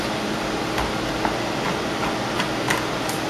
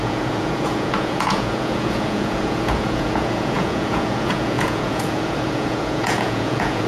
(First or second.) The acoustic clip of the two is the first